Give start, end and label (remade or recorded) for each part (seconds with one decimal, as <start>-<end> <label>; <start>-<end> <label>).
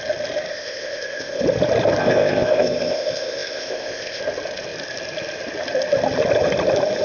0.0-0.5 recorded; 0.5-1.4 remade; 1.4-2.0 recorded; 2.0-4.2 remade; 4.2-7.0 recorded